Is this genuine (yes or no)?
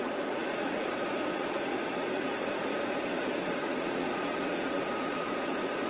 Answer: no